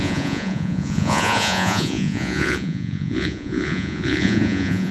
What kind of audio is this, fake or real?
fake